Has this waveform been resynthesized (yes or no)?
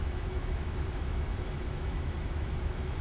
yes